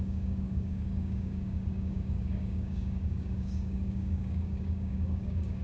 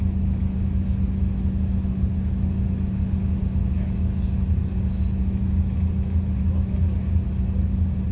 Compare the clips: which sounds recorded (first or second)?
second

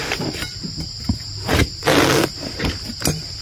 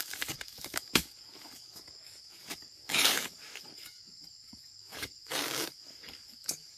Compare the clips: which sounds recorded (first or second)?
first